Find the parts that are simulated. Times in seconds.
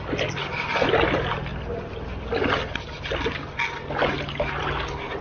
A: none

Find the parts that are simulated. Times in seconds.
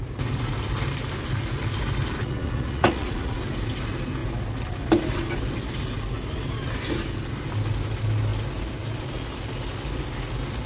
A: 2.2-3.4 (vocoder, Vocos)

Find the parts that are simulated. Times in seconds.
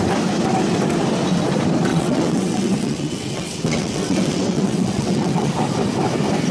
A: 1.9-5.5 (vocoder, WaveNeXt)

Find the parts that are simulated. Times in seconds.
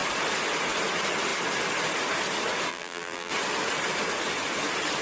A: 2.7-3.3 (vocoder, BigVGAN v2)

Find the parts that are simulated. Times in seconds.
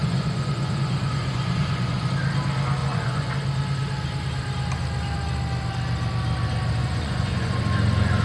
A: 0.0-2.1 (vocoder, Vocos); 2.8-3.3; 6.8-7.6